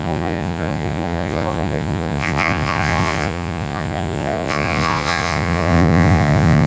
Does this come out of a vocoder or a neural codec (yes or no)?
yes